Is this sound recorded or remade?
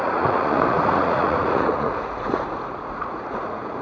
remade